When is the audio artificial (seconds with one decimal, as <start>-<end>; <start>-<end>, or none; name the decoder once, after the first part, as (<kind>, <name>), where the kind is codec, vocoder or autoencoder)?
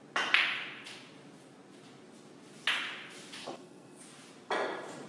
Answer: 3.4-4.0 (codec, SNAC)